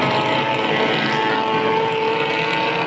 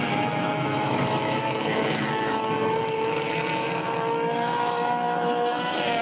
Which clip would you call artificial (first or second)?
second